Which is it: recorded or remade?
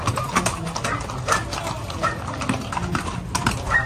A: recorded